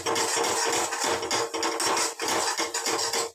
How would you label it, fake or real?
real